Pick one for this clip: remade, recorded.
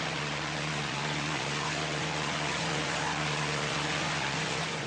remade